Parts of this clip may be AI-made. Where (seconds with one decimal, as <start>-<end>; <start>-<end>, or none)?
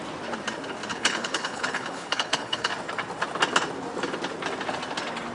0.9-2.7